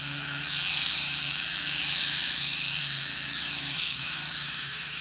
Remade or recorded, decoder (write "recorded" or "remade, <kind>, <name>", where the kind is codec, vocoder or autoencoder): remade, autoencoder, DAC-VAE